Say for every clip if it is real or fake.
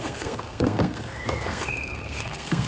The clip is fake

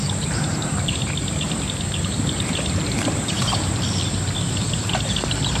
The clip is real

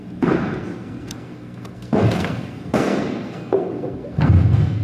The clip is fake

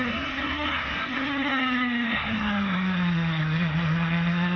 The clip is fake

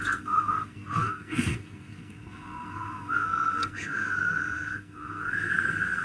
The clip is fake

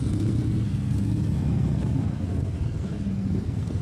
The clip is fake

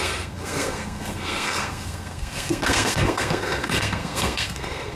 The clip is fake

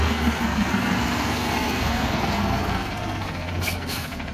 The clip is fake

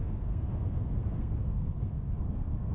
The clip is fake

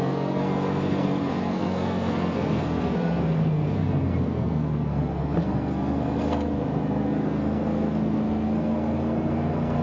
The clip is fake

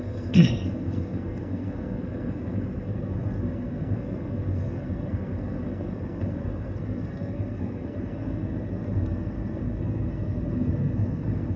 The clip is fake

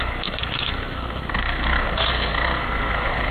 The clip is fake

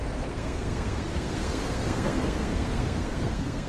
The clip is fake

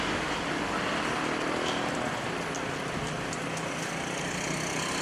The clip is real